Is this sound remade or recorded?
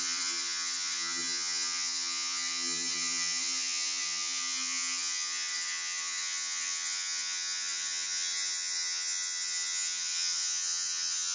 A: remade